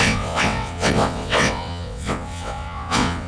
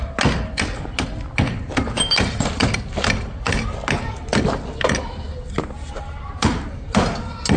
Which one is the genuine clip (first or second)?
second